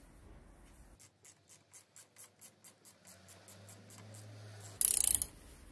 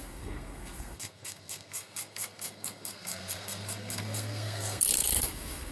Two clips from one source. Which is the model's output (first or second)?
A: second